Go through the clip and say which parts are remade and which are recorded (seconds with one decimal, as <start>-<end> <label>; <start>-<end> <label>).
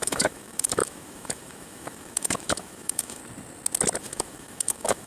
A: 0.0-3.2 remade; 3.2-4.0 recorded; 4.0-5.1 remade